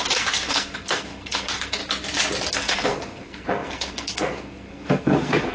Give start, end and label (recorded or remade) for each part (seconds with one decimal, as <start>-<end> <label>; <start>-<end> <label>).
0.0-1.8 remade; 1.8-2.5 recorded; 2.5-5.5 remade